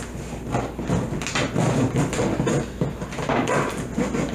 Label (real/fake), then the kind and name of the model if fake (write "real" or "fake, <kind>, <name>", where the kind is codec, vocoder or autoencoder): real